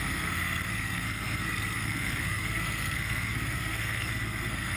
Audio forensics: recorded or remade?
remade